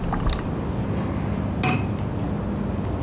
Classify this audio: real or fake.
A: real